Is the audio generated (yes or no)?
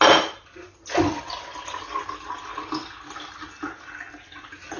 no